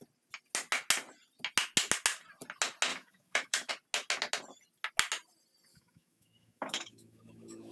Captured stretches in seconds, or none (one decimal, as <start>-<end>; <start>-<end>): 0.0-2.9; 3.7-5.7